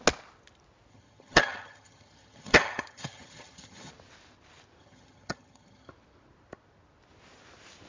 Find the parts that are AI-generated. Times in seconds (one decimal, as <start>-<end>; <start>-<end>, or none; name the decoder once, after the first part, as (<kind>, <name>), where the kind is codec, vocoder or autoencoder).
0.9-3.9 (vocoder, HiFi-GAN); 4.8-5.9